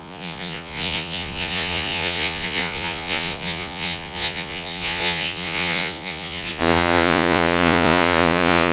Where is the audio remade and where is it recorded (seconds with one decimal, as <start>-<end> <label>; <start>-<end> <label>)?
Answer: 0.0-8.7 remade